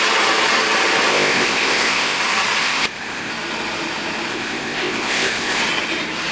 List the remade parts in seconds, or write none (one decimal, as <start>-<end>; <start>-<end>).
1.1-2.2; 2.6-3.3; 4.3-5.6